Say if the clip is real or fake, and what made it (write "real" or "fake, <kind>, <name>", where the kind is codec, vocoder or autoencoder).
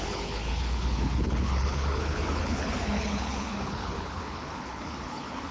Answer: fake, codec, HILCodec